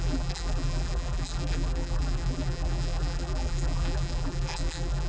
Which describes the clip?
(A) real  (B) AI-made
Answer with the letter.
B